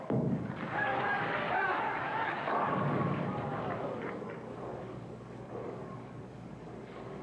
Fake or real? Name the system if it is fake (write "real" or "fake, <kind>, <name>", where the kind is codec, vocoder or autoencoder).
fake, codec, DAC